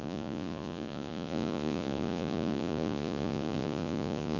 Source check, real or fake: fake